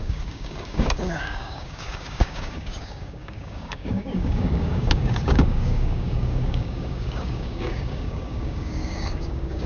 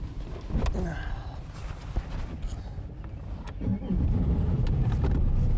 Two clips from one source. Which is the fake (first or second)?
first